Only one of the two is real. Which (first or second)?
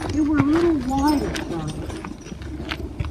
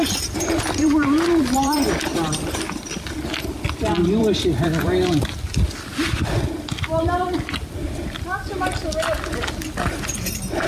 first